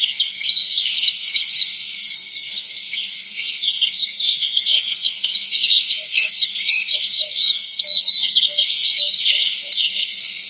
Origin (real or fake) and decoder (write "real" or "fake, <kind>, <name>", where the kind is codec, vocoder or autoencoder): fake, codec, SNAC